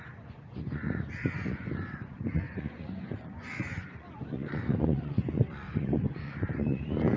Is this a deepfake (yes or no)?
yes